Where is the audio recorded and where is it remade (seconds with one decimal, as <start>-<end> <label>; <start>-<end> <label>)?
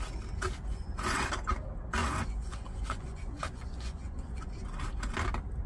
0.0-0.7 recorded; 0.7-1.3 remade; 1.3-2.0 recorded; 2.0-4.5 remade; 4.5-5.7 recorded